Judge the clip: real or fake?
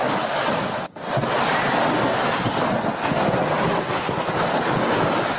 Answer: real